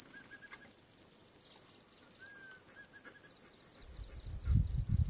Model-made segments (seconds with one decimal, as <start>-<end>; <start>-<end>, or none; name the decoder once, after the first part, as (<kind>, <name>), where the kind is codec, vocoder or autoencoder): none